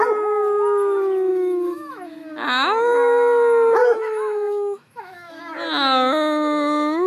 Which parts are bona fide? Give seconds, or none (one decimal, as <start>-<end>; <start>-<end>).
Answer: 0.0-1.3; 1.9-3.8; 5.4-7.1